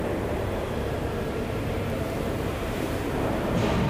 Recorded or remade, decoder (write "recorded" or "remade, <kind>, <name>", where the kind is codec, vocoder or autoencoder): remade, vocoder, BigVGAN v2